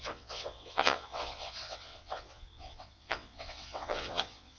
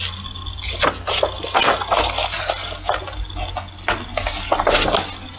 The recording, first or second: second